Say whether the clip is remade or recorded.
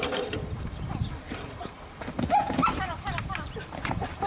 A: remade